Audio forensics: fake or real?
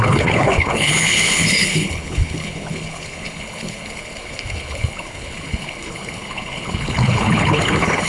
fake